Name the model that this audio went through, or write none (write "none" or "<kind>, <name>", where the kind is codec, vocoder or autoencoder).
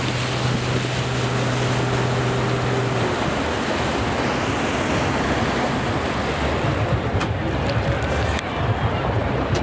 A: none